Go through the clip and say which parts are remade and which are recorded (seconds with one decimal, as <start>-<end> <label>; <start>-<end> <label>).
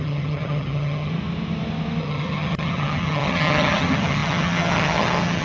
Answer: 0.0-1.1 remade; 1.1-2.0 recorded; 2.0-5.4 remade